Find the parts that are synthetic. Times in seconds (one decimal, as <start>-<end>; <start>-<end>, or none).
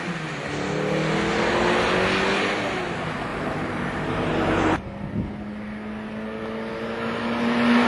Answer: 3.3-4.3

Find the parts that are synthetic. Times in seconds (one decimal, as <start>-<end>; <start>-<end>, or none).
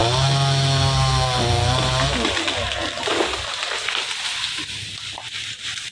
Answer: none